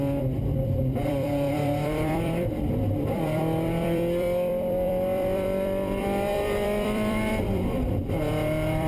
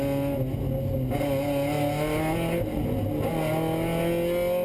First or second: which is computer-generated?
first